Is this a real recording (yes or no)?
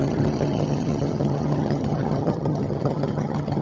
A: no